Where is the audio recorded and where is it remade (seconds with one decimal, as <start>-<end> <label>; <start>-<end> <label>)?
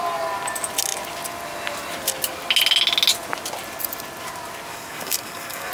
0.0-4.7 recorded; 4.7-5.7 remade